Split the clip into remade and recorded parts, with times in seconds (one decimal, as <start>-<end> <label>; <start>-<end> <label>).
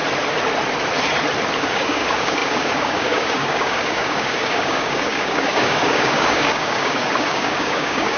0.0-1.6 recorded; 1.6-8.2 remade